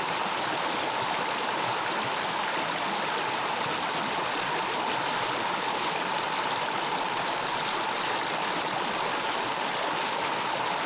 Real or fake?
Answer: real